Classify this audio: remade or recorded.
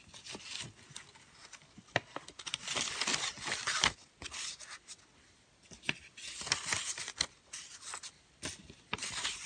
recorded